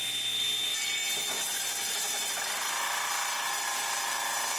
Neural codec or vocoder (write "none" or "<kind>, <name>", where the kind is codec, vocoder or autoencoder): none